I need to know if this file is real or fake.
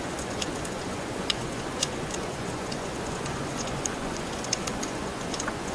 fake